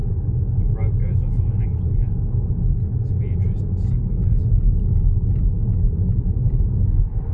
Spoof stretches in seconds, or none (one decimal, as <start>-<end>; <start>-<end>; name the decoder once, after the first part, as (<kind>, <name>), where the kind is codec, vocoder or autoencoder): none